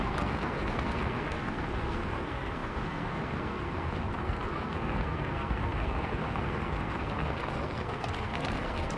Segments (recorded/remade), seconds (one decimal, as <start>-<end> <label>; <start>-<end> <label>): 0.0-9.0 remade